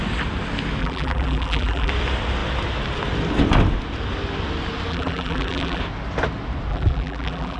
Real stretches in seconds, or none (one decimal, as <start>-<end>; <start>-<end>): 0.0-0.8; 1.9-4.9; 5.8-6.7

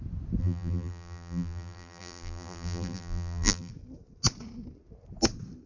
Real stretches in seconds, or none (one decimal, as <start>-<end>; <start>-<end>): 0.0-0.4; 3.7-5.7

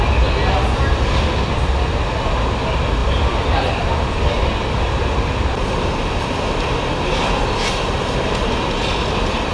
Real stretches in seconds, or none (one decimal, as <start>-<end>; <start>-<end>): 0.0-3.0; 5.2-9.5

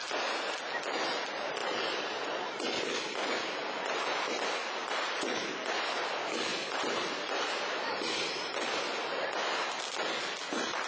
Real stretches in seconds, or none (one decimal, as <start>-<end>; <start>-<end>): 0.0-1.6; 2.4-4.8; 5.4-10.9

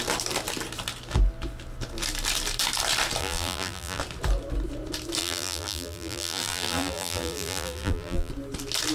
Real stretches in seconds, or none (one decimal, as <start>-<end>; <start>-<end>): 0.0-3.2; 4.0-5.2; 8.3-8.9

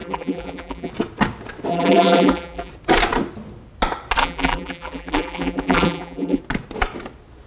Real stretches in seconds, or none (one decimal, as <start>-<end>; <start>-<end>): 0.9-1.7; 2.7-4.2; 6.4-7.5